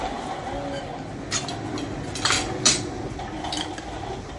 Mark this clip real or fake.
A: real